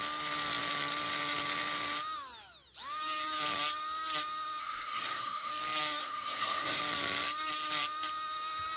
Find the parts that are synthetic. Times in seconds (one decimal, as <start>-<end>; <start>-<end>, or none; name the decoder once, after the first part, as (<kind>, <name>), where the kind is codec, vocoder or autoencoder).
4.6-5.5 (codec, SNAC); 6.0-6.8